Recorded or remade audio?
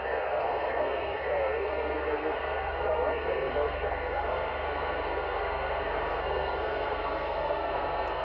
remade